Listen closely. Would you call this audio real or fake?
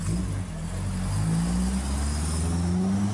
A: real